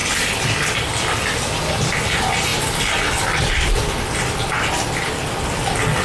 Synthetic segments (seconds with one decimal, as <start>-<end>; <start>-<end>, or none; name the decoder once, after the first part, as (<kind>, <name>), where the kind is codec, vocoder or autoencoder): none